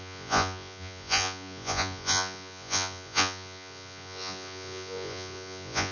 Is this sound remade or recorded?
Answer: remade